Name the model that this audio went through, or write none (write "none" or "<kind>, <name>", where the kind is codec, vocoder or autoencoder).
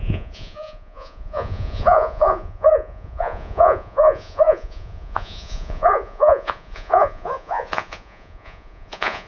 vocoder, Vocos